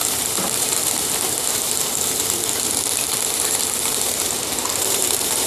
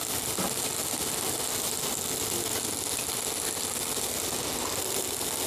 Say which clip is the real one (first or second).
second